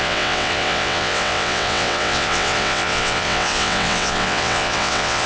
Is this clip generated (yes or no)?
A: yes